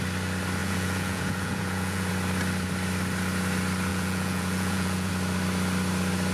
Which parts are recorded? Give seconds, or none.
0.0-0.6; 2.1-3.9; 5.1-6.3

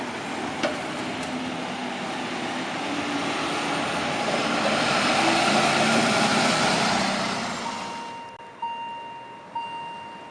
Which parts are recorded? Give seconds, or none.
0.0-10.3

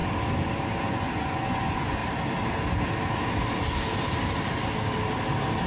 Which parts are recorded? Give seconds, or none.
0.0-0.8; 2.0-5.7

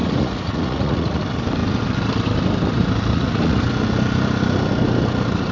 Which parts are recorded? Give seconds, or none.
1.2-3.1; 3.6-5.5

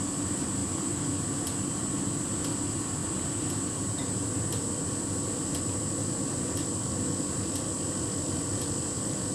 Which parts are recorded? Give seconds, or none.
0.0-9.3

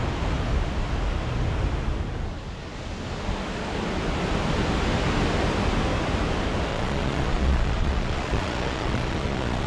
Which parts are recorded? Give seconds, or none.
0.0-6.7

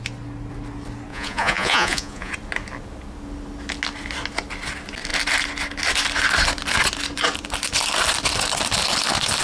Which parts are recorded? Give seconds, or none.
0.0-1.1; 2.3-9.4